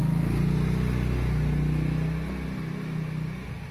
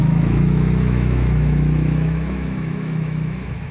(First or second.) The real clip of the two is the first